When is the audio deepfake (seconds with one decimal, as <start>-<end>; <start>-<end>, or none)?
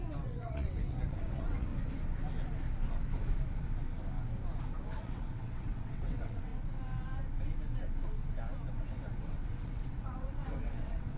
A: 0.0-1.7; 5.0-6.5; 8.8-11.2